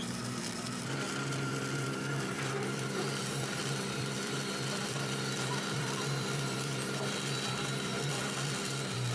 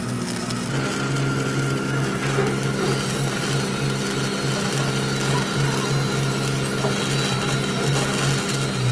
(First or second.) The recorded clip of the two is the second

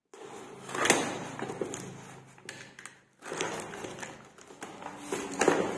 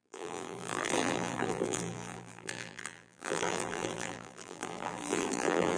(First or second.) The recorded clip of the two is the first